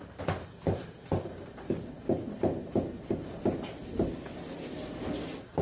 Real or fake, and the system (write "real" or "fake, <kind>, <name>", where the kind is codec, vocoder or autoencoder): real